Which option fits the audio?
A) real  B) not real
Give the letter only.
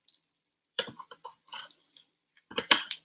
B